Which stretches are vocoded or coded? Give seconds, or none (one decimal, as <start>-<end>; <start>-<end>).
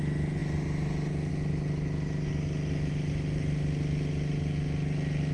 none